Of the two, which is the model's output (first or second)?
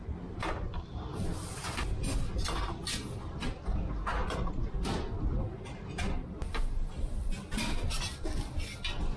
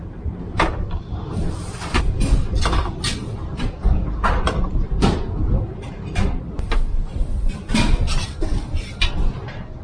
second